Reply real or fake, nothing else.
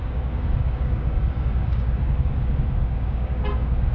fake